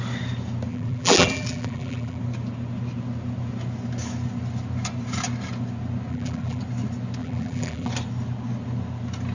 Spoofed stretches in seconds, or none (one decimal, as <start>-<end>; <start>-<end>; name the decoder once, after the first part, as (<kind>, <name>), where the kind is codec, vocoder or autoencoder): 0.7-2.2 (vocoder, BigVGAN v2); 6.1-6.6; 7.2-7.9